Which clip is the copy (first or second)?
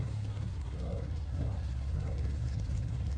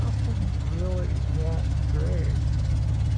first